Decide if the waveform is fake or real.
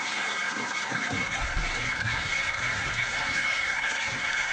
fake